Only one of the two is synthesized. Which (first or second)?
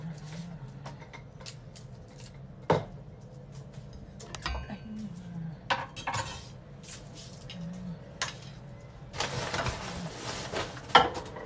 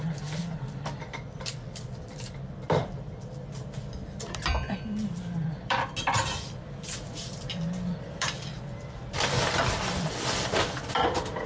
second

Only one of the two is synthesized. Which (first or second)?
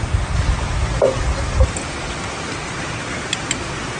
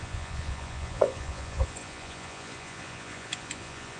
second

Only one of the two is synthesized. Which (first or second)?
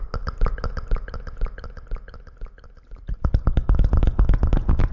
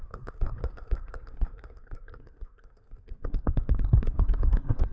second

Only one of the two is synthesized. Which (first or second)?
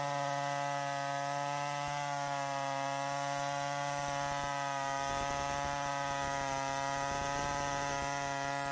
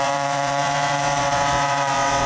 second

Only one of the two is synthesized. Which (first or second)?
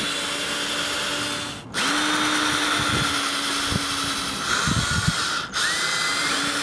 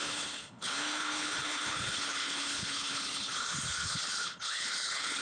second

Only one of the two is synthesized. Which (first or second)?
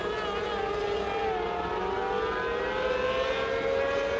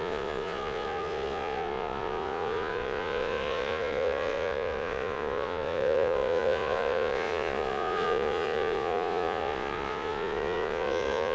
second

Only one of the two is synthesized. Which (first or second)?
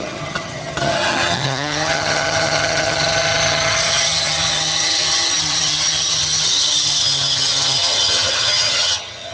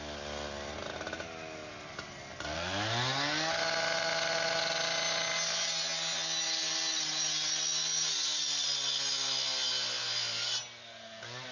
first